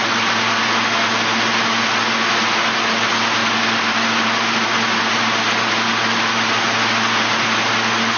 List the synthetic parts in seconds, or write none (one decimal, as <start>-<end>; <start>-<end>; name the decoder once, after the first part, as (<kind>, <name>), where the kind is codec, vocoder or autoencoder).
none